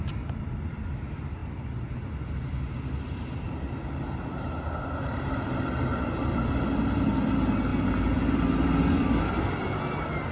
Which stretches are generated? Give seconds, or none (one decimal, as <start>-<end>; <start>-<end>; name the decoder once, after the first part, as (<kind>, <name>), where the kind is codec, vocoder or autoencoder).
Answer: none